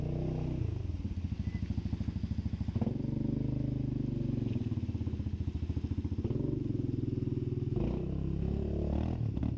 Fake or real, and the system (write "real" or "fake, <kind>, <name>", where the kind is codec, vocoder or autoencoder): real